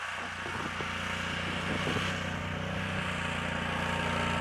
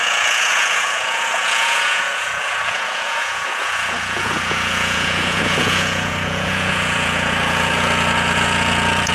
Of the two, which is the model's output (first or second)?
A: second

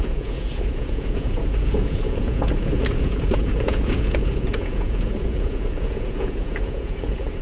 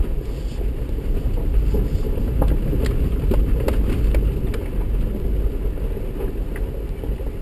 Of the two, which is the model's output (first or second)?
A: first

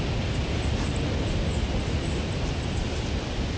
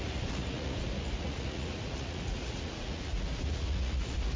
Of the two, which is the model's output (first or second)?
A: second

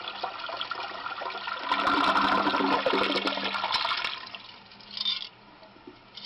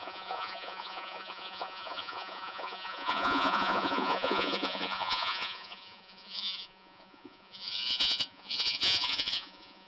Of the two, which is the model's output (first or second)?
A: second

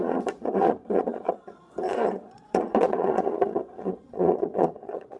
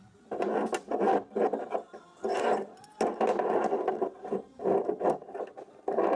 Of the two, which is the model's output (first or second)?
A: first